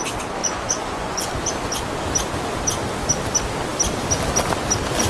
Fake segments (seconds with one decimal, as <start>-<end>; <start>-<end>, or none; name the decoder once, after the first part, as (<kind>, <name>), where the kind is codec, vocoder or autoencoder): 0.4-1.3 (vocoder, Vocos)